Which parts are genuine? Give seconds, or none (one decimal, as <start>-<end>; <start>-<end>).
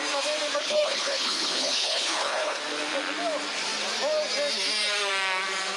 0.0-0.6; 2.6-5.8